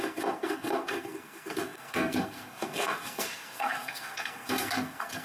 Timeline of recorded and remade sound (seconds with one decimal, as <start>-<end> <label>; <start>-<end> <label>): 0.0-5.2 remade